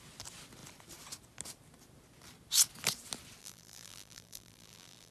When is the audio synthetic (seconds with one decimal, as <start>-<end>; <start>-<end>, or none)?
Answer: 3.4-5.1